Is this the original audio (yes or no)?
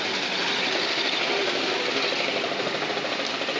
yes